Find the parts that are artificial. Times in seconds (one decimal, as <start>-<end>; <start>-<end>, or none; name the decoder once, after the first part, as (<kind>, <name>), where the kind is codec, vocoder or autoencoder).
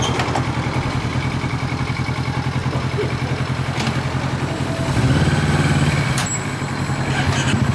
none